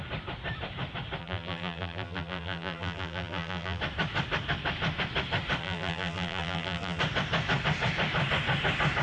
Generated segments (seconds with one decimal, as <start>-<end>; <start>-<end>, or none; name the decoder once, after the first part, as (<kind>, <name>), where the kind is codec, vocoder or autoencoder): 1.2-3.8 (vocoder, BigVGAN v2); 5.6-7.0